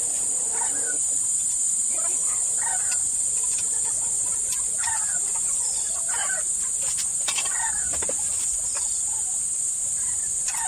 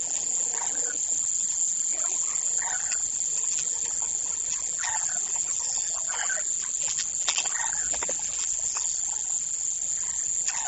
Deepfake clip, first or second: second